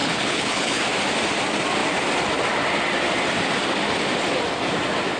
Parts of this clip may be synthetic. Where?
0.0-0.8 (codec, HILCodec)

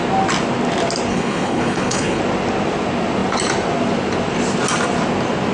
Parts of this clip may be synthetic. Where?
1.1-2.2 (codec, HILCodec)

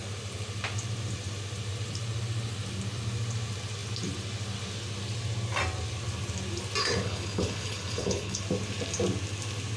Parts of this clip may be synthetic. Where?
6.8-8.4 (codec, HILCodec)

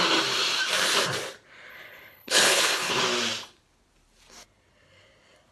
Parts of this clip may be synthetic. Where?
1.7-3.0 (codec, HILCodec)